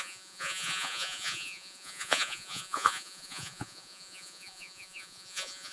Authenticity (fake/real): fake